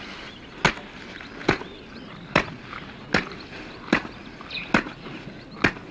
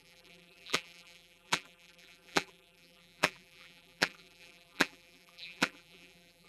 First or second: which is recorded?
first